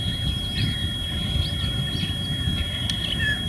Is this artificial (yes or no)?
no